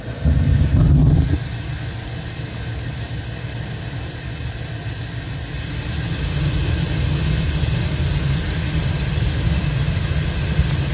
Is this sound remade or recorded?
recorded